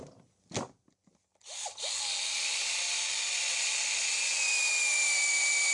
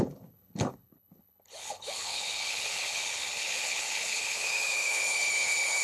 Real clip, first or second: first